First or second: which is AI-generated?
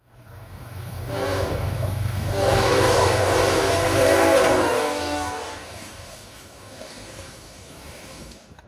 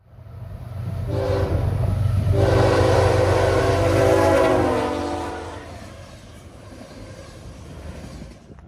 first